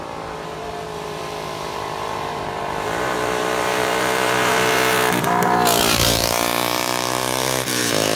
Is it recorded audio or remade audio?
remade